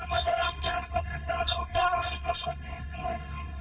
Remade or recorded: remade